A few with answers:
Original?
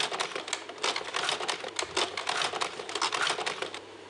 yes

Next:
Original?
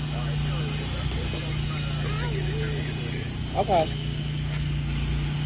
yes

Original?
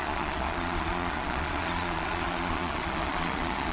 no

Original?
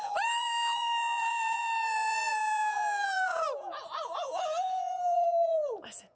no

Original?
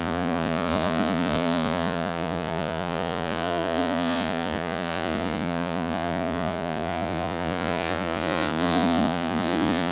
no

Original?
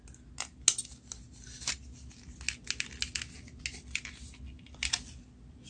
yes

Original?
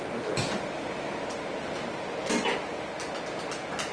yes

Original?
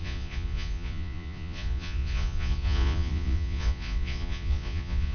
no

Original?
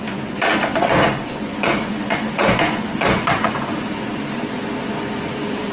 no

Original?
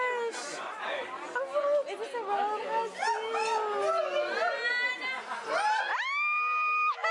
yes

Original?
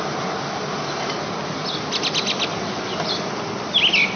yes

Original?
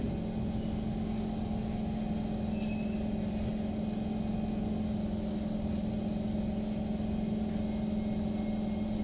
yes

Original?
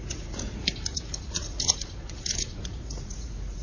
no